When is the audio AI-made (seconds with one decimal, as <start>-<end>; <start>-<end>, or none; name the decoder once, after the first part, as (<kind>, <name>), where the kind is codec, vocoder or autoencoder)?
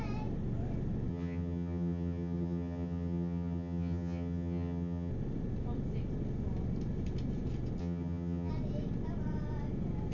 1.1-5.1 (vocoder, HiFi-GAN); 7.8-8.5